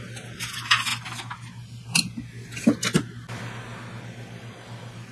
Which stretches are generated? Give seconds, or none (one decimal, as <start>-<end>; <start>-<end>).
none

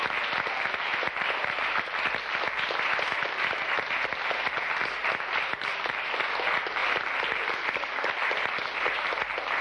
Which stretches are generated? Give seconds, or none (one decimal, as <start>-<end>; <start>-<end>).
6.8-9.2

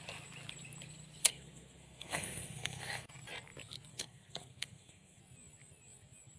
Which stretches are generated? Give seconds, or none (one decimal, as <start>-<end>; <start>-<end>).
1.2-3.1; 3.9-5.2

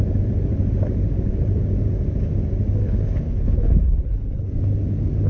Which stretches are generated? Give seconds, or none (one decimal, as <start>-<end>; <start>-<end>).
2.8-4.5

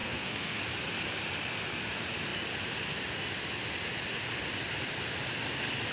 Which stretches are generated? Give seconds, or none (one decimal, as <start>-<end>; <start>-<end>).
0.0-0.6

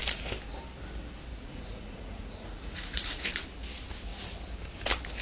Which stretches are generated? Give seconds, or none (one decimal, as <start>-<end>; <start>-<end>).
1.3-3.3